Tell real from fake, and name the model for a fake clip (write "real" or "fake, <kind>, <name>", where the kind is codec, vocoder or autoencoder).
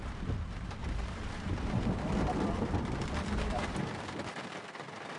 fake, vocoder, BigVGAN v2